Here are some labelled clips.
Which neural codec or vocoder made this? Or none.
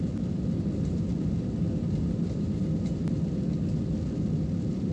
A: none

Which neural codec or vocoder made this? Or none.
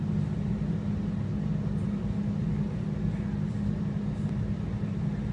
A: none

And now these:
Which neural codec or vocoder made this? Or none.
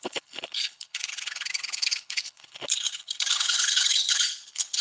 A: codec, HILCodec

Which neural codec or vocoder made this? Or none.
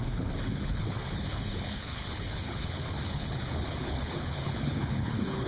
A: codec, HILCodec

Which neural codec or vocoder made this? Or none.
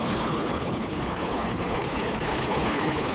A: codec, HILCodec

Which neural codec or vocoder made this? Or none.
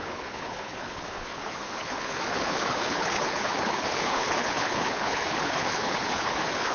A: codec, HILCodec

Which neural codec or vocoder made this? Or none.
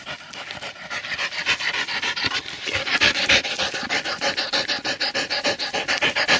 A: none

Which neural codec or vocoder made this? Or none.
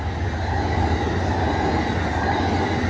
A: none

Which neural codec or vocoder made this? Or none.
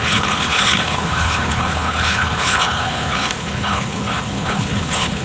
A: codec, HILCodec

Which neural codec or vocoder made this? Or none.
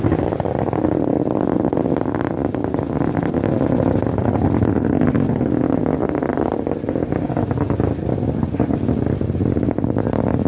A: none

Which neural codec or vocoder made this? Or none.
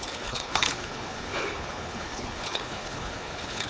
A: codec, HILCodec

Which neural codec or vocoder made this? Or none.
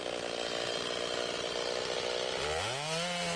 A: none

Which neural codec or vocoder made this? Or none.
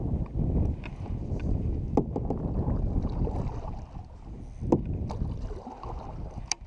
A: none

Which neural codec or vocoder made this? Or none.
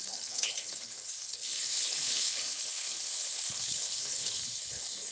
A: codec, HILCodec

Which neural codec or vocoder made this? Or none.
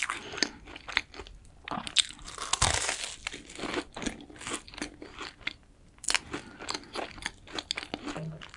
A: none